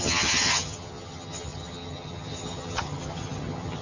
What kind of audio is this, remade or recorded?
remade